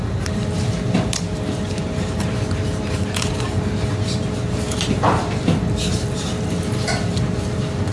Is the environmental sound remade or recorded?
remade